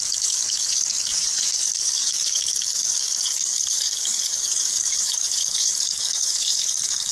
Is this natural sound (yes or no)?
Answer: no